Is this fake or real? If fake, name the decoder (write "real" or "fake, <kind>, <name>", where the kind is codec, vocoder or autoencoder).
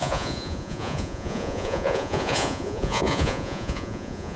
fake, vocoder, Vocos